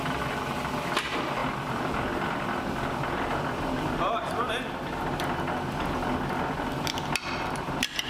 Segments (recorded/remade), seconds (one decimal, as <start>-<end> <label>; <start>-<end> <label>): 0.0-1.4 recorded; 1.4-4.5 remade; 4.5-8.1 recorded